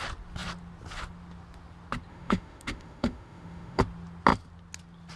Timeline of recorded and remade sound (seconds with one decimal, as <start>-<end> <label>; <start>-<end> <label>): 0.0-2.1 recorded; 2.1-3.8 remade; 3.8-5.2 recorded